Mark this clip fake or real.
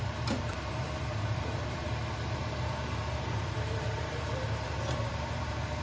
fake